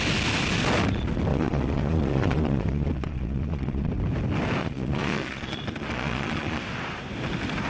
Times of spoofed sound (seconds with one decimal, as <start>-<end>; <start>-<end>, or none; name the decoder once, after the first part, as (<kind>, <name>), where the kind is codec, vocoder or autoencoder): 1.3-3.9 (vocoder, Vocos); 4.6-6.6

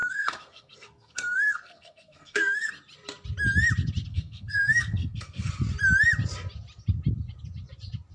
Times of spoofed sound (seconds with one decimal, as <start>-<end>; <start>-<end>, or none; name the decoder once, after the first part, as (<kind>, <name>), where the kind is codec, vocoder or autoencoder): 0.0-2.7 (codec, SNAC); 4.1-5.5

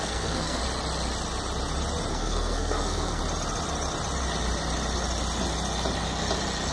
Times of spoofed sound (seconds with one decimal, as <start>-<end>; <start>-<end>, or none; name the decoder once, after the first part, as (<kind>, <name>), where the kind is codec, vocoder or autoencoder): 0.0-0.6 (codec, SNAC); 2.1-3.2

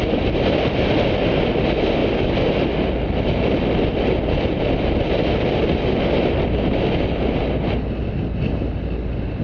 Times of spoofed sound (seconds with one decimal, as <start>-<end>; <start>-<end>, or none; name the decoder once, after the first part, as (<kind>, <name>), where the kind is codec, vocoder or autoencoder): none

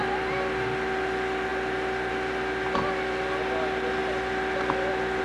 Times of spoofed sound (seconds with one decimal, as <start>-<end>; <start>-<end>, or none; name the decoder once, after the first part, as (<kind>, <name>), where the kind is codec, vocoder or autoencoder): none